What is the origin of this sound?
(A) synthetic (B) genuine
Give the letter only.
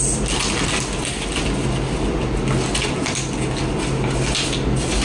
B